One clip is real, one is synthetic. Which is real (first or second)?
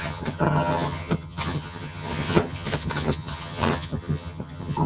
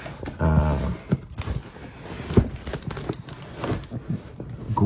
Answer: second